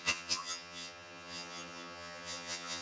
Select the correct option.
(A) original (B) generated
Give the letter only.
B